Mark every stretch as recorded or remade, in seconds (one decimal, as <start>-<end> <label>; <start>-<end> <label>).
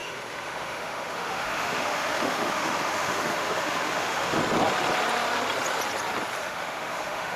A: 0.0-4.4 remade; 4.4-6.4 recorded; 6.4-7.4 remade